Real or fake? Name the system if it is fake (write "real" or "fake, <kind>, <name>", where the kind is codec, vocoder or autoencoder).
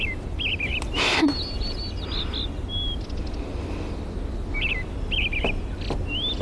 real